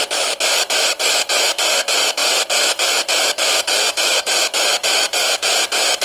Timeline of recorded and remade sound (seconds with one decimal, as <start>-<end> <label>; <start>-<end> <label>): 0.0-6.0 remade